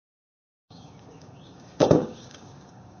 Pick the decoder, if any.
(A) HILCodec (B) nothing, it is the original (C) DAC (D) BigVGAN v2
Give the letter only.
C